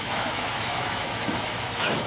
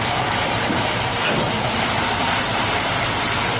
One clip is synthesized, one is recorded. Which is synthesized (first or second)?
first